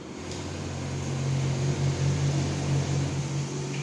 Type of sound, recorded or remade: recorded